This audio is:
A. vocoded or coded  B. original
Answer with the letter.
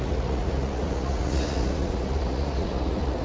A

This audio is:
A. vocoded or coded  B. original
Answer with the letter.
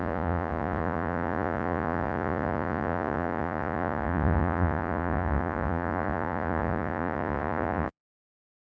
A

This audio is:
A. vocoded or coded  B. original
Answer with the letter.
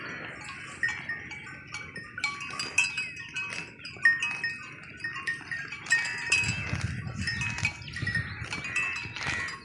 B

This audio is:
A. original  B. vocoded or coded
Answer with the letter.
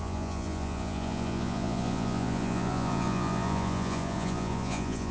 B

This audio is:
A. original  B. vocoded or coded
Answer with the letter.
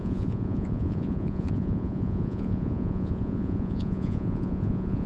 B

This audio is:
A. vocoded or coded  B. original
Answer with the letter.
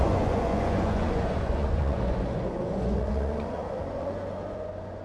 A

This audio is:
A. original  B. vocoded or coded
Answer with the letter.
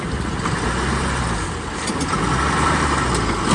A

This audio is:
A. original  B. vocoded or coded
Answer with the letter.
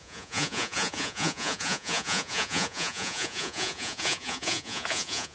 B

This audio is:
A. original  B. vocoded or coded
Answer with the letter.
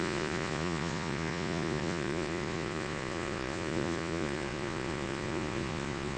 B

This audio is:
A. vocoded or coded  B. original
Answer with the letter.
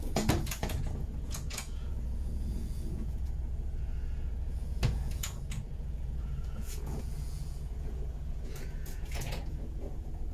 A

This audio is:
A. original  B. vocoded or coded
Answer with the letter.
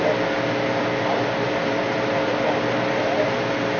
A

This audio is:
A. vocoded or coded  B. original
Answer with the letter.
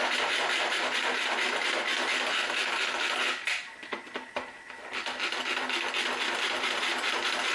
B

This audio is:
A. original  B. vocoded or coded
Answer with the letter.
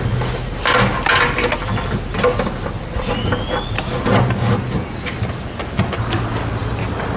A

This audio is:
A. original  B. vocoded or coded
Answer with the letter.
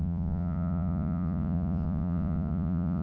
B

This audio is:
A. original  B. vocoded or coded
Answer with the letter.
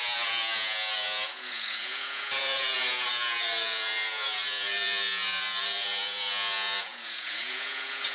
B